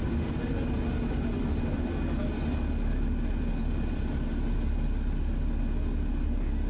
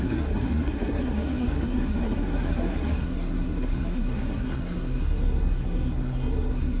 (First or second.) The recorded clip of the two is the first